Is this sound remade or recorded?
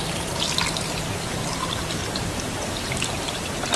recorded